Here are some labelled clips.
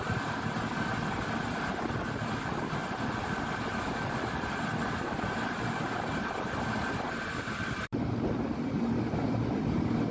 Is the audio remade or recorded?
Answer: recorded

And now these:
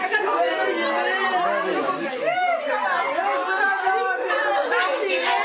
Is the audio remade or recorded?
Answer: recorded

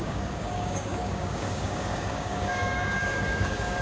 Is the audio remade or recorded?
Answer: remade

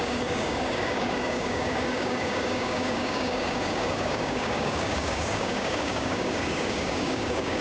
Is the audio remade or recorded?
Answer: remade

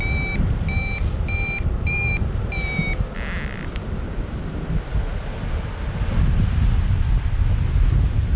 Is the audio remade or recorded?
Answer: recorded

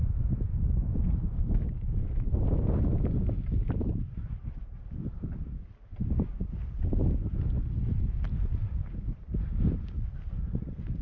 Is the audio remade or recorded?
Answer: recorded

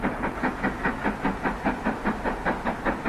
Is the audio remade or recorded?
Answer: recorded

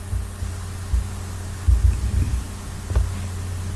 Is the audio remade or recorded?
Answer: recorded